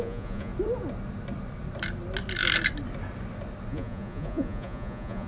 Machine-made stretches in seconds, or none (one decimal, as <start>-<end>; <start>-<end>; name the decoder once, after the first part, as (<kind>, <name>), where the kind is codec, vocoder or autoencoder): 0.0-0.5 (vocoder, Vocos); 3.7-5.3

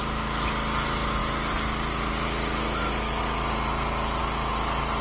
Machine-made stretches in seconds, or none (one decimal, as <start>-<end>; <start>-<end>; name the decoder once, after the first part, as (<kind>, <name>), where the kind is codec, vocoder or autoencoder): none

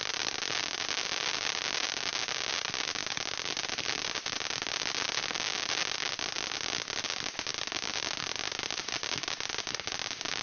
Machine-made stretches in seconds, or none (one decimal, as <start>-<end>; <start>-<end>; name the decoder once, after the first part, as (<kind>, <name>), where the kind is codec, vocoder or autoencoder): none

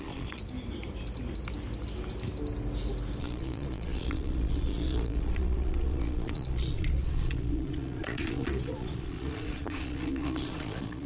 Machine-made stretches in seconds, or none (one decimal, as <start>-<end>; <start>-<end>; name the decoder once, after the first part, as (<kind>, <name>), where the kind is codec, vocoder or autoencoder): 0.0-0.4 (vocoder, Vocos); 3.2-11.1

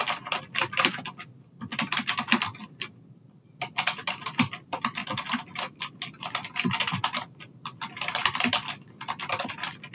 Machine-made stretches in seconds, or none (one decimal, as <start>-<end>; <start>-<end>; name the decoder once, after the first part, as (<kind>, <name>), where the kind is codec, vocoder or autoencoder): none

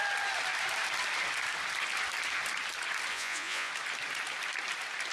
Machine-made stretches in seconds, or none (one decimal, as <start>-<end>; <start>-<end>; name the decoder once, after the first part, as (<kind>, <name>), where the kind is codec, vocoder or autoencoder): 3.1-3.7 (vocoder, Vocos)

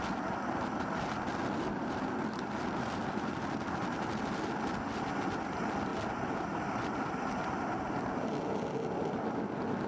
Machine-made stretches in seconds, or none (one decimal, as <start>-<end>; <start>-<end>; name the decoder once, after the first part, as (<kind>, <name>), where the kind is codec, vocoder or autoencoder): none